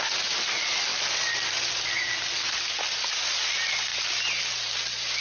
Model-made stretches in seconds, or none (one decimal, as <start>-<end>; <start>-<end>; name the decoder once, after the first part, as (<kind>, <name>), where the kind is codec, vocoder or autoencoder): none